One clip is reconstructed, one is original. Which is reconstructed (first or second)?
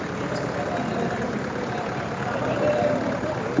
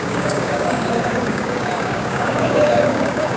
second